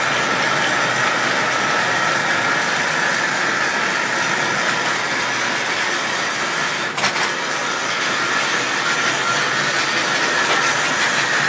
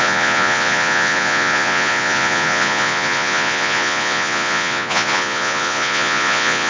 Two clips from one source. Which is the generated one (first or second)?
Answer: second